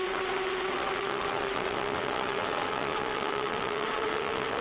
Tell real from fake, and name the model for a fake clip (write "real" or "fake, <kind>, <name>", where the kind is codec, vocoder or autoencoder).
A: fake, vocoder, WaveNeXt